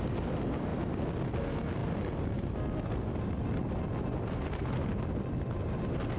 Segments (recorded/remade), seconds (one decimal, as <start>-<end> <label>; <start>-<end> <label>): 0.0-6.2 recorded